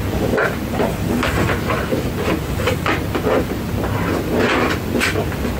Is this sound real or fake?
real